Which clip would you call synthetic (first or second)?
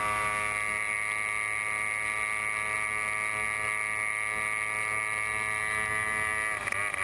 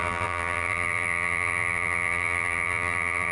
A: second